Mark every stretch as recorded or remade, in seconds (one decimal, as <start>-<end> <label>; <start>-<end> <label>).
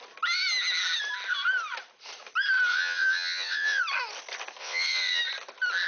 0.0-2.7 recorded; 2.7-3.8 remade; 3.8-4.6 recorded; 4.6-5.2 remade; 5.2-5.9 recorded